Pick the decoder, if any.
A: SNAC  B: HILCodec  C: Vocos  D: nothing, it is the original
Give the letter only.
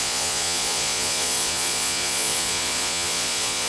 C